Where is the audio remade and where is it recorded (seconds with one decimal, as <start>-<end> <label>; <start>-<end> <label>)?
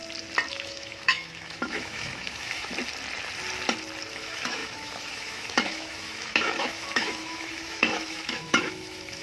0.0-0.5 recorded; 0.5-2.7 remade; 2.7-4.1 recorded; 4.1-9.2 remade